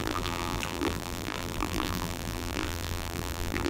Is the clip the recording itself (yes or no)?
no